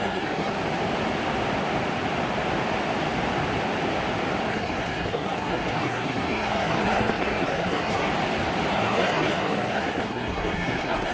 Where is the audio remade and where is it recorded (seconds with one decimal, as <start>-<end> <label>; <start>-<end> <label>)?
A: 0.0-0.5 remade; 0.5-4.5 recorded; 4.5-8.1 remade; 8.1-8.7 recorded; 8.7-11.1 remade